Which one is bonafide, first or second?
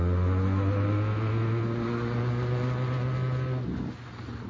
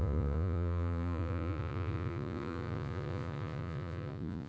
first